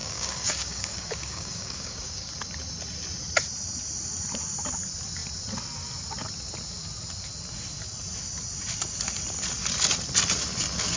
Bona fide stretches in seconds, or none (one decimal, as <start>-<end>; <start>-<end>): 2.3-11.0